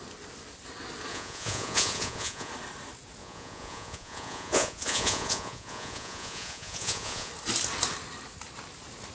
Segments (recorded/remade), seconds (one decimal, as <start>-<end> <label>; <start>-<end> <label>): 0.0-1.1 recorded; 1.1-2.5 remade; 2.5-3.2 recorded; 3.2-7.3 remade; 7.3-9.1 recorded